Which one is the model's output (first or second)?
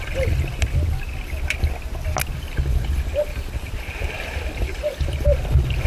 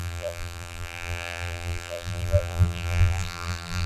second